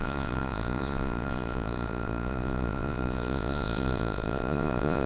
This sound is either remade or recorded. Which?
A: remade